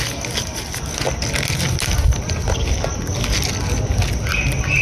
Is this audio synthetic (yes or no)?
no